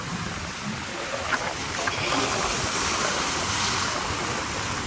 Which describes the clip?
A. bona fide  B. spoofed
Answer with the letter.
A